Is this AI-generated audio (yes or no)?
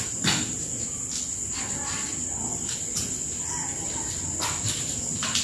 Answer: no